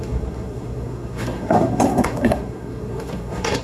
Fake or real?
fake